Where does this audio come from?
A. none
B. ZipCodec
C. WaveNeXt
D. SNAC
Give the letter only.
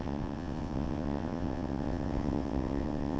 C